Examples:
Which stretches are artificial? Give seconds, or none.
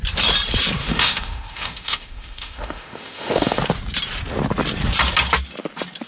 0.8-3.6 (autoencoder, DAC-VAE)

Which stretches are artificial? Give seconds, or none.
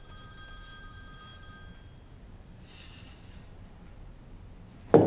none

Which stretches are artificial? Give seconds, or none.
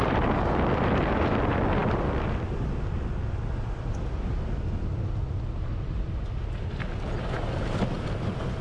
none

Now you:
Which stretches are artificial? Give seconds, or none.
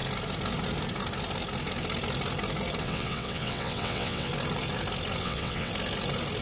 2.8-4.3 (vocoder, WaveNeXt); 5.2-5.7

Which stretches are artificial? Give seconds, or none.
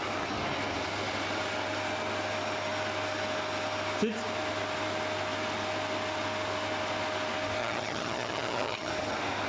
7.6-8.9 (vocoder, HiFi-GAN)